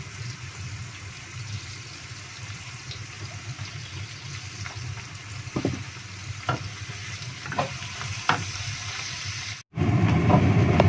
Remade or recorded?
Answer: recorded